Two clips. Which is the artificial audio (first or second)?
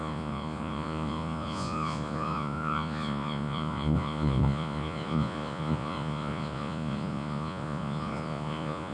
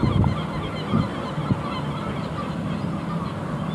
first